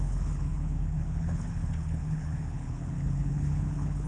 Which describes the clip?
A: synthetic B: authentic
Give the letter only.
A